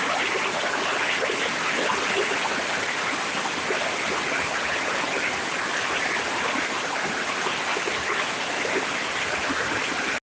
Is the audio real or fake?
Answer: real